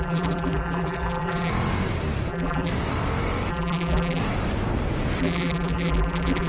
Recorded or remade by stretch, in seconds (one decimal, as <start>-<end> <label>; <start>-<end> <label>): 0.0-1.5 remade; 1.5-2.3 recorded; 2.3-2.7 remade; 2.7-3.5 recorded; 3.5-4.2 remade; 4.2-5.2 recorded; 5.2-6.5 remade